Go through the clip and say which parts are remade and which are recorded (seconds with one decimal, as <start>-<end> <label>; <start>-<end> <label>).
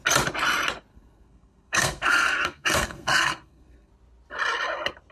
0.0-0.9 recorded; 0.9-3.9 remade; 3.9-5.1 recorded